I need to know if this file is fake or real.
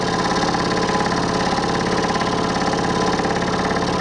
real